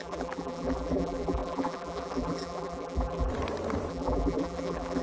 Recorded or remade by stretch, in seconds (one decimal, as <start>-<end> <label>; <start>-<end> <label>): 0.0-3.3 remade; 3.3-3.9 recorded; 3.9-5.0 remade